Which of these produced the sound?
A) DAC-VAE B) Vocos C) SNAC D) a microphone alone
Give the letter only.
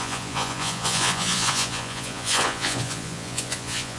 B